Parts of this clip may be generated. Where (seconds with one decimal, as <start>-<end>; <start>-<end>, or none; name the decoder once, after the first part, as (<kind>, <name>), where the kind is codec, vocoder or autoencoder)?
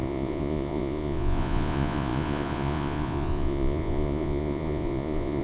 0.0-5.4 (vocoder, Vocos)